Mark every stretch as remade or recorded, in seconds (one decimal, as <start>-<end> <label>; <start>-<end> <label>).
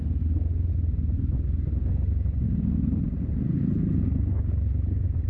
0.0-5.3 recorded